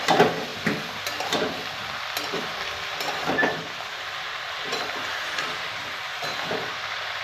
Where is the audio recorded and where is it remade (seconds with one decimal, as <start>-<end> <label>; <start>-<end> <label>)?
0.0-3.4 recorded; 3.4-6.8 remade; 6.8-7.2 recorded